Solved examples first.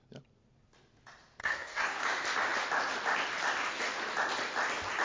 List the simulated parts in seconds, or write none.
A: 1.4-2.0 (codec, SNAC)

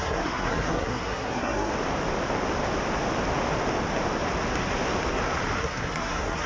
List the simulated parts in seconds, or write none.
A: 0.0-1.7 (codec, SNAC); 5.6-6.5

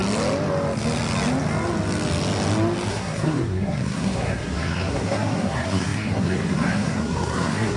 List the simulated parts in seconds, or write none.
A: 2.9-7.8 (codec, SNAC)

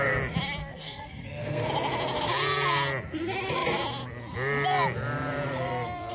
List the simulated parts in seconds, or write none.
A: 0.6-1.7 (codec, SNAC)